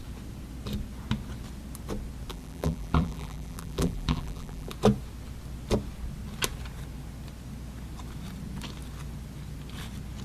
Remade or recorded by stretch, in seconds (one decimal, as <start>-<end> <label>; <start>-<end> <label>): 0.0-2.3 recorded; 2.3-4.7 remade; 4.7-10.2 recorded